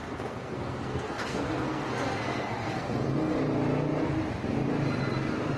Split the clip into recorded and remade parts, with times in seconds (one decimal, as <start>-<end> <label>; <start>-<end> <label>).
0.0-3.4 remade; 3.4-5.6 recorded